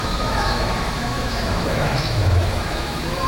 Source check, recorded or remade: remade